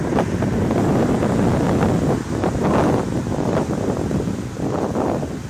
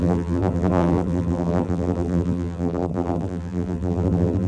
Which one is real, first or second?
first